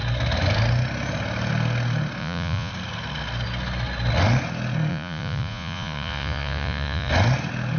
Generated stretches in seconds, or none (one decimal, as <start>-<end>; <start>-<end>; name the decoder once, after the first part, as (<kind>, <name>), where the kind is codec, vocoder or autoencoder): 2.2-2.7 (vocoder, Vocos); 4.9-7.1